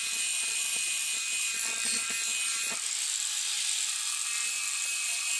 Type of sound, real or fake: real